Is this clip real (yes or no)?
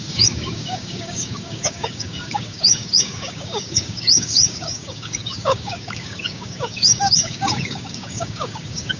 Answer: no